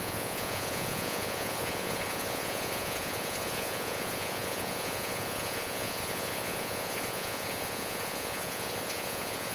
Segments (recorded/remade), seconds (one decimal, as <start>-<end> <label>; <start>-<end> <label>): 0.0-9.5 remade